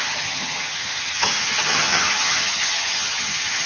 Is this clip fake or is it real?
fake